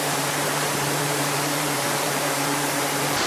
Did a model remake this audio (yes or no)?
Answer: yes